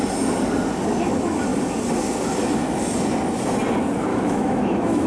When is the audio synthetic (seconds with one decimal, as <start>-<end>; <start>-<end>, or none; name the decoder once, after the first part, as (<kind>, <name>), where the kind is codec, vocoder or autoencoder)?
4.1-5.1 (autoencoder, DAC-VAE)